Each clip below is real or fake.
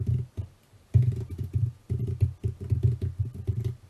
real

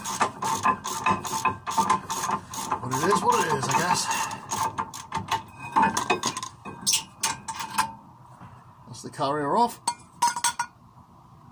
real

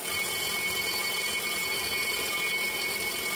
real